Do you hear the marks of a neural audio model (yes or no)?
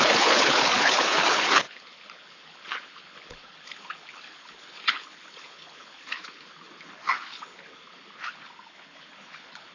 yes